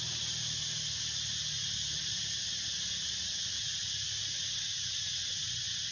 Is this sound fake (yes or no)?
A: no